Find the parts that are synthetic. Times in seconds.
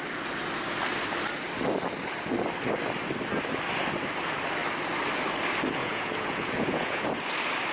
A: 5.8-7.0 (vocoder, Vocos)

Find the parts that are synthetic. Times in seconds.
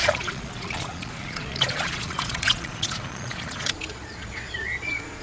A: 0.0-5.2 (vocoder, Vocos)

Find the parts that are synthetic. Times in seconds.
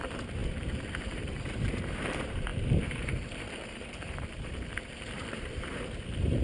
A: 0.0-6.4 (vocoder, BigVGAN v2)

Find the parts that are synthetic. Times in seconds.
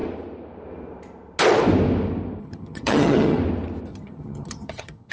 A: 2.4-3.4 (vocoder, HiFi-GAN); 3.9-5.1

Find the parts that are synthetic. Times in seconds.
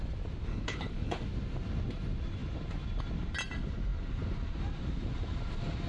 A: 0.5-1.2 (codec, HILCodec)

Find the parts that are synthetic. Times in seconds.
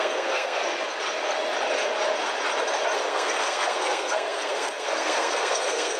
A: 0.0-0.6 (codec, SNAC); 3.1-6.0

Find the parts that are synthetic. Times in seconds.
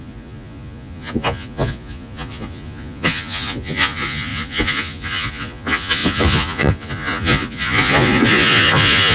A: 0.0-9.1 (vocoder, Vocos)